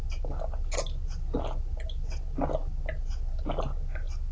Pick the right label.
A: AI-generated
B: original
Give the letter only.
B